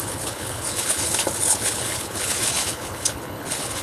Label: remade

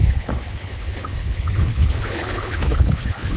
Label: remade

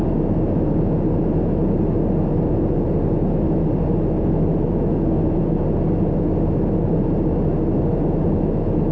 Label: recorded